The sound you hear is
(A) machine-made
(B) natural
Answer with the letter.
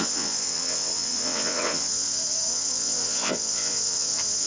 A